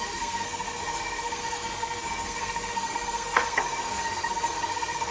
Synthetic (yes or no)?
yes